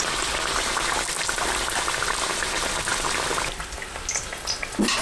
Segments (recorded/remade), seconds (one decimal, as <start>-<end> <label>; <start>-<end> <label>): 0.0-5.0 recorded

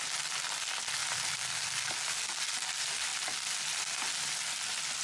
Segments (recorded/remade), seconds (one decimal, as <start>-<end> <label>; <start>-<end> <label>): 0.0-5.0 recorded

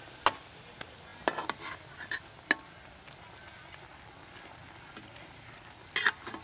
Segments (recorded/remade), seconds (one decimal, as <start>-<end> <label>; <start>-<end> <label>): 0.0-6.4 recorded

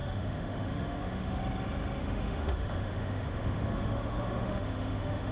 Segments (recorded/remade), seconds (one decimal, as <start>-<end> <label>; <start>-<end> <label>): 0.0-1.4 remade; 1.4-2.0 recorded; 2.0-5.3 remade